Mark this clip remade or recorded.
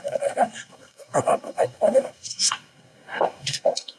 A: remade